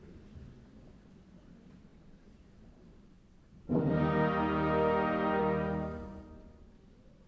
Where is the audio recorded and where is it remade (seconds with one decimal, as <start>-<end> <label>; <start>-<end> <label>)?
0.0-7.3 recorded